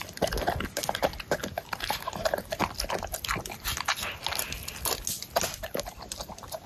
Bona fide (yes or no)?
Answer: yes